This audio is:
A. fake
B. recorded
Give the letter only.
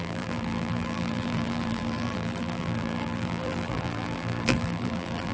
A